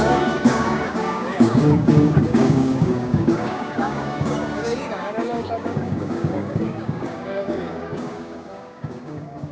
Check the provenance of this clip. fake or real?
fake